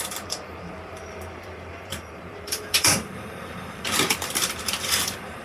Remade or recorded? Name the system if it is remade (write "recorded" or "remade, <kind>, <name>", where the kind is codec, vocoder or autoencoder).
remade, vocoder, BigVGAN v2